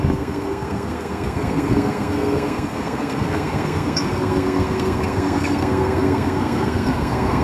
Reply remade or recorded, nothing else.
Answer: remade